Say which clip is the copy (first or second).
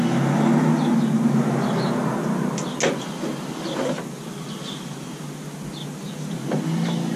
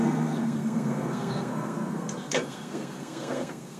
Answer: second